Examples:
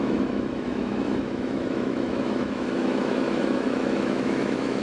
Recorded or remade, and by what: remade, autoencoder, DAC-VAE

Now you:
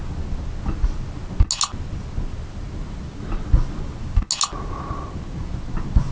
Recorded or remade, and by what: recorded